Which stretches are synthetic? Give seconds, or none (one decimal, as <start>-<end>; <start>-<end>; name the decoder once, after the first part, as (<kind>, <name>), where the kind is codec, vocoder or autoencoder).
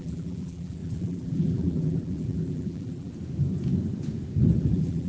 0.0-3.1 (vocoder, BigVGAN v2); 4.6-5.1